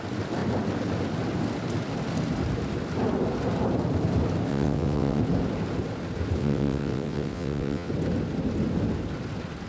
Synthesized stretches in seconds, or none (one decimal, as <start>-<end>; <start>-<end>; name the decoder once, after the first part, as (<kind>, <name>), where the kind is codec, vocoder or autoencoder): 4.5-5.2 (vocoder, WaveNeXt); 6.4-7.9

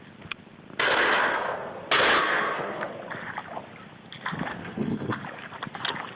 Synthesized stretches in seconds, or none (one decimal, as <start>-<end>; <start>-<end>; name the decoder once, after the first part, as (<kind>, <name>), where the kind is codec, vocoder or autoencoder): 1.3-1.8 (codec, SNAC); 2.2-2.9; 4.5-5.2

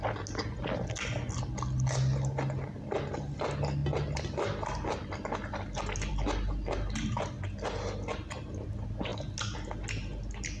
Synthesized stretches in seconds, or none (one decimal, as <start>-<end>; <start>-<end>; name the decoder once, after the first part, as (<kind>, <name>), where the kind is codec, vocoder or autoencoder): none

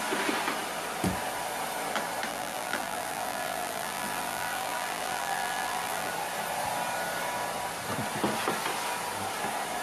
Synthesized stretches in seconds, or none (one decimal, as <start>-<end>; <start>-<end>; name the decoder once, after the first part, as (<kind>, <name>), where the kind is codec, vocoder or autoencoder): 2.3-6.1 (vocoder, BigVGAN v2)

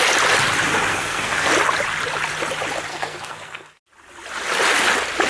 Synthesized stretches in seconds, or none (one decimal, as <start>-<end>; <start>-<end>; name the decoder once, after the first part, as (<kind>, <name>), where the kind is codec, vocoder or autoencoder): 0.9-1.5 (codec, SNAC); 2.9-3.8

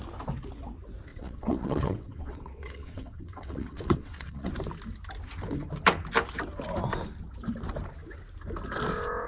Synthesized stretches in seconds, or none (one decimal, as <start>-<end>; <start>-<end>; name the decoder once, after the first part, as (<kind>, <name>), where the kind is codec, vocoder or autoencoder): 1.1-4.5 (vocoder, WaveNeXt)

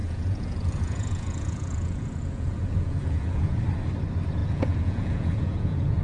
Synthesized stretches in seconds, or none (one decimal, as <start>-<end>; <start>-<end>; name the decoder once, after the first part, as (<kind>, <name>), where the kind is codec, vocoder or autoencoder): 0.0-3.6 (vocoder, Vocos); 4.4-6.0